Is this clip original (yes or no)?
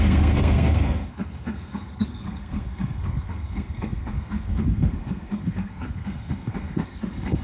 no